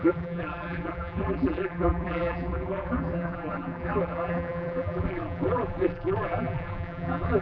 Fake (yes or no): yes